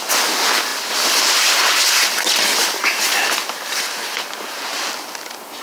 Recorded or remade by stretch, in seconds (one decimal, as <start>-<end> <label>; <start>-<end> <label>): 0.0-5.6 recorded